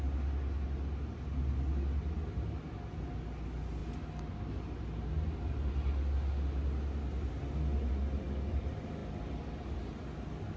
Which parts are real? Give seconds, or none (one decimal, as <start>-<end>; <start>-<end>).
0.0-10.6